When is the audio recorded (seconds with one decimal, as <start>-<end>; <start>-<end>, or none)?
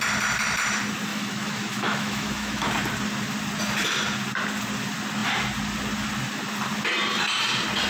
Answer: 0.0-1.1; 2.7-7.9